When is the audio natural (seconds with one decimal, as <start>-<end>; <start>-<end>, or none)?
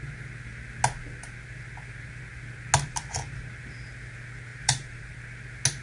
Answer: 0.0-2.9; 3.5-4.5; 5.2-5.8